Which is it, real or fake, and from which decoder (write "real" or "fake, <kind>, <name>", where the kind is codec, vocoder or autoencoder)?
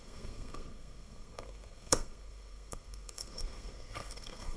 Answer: fake, codec, SNAC